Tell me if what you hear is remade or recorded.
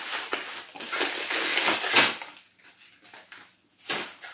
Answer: recorded